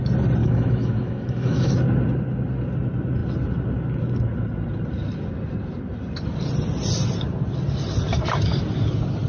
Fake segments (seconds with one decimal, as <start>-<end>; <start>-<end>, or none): 0.4-1.7